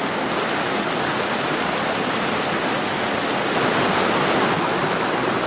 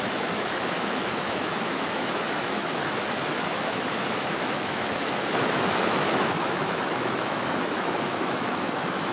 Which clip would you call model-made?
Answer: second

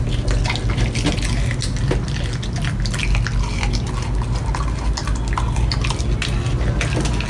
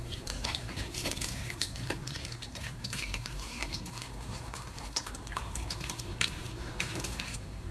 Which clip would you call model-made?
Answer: second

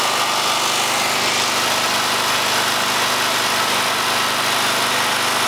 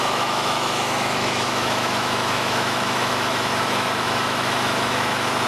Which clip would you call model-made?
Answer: second